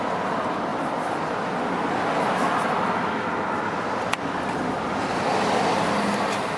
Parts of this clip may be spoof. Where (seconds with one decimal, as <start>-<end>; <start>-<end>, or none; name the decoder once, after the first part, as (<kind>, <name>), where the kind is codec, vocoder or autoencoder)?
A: none